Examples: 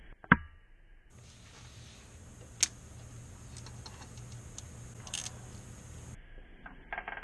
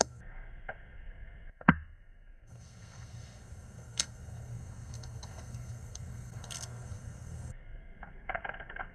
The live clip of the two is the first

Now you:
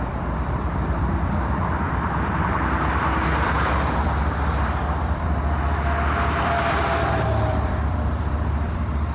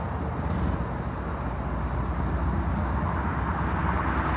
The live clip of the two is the second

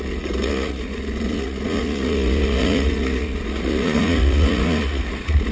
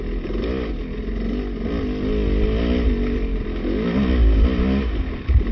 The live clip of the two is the second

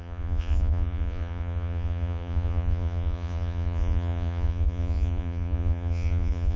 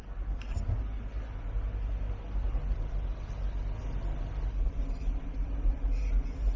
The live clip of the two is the second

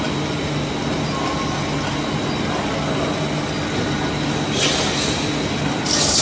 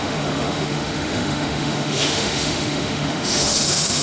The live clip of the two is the first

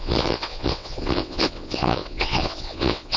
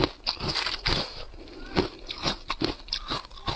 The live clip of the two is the second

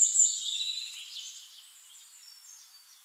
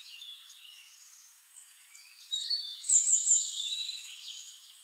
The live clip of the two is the first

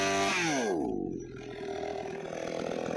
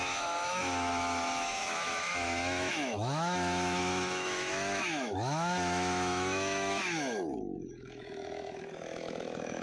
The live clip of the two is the first